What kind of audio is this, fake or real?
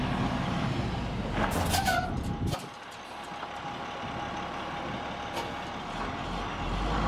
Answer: real